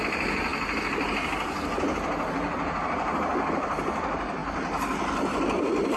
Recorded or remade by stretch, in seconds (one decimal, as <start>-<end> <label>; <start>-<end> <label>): 0.0-6.0 recorded